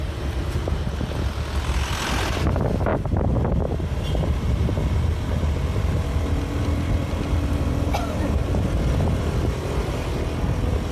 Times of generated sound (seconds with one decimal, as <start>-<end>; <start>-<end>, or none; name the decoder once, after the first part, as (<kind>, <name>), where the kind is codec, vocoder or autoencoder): 8.0-8.7 (vocoder, BigVGAN v2)

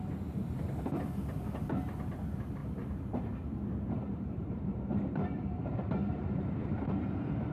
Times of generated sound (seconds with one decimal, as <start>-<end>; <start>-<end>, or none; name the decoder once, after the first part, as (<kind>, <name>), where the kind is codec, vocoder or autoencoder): 2.6-7.1 (vocoder, BigVGAN v2)

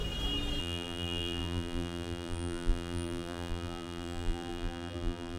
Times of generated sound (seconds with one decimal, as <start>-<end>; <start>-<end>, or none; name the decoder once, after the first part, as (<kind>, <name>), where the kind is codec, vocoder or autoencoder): 0.6-5.4 (vocoder, BigVGAN v2)

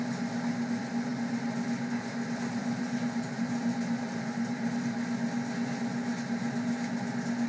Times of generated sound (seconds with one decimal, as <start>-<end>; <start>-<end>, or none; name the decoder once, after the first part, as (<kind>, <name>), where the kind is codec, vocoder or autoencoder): 2.6-4.7 (vocoder, BigVGAN v2)

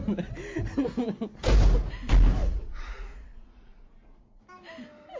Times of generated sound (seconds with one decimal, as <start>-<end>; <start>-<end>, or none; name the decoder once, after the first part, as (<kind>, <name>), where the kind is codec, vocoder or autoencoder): 2.4-4.4 (vocoder, Vocos)